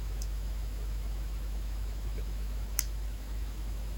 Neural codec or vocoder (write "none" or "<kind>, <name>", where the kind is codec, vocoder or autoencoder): autoencoder, DAC-VAE